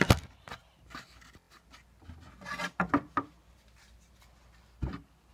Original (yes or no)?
yes